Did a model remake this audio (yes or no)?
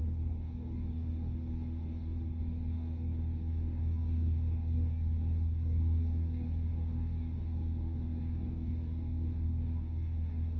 yes